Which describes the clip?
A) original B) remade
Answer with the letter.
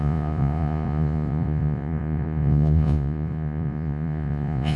B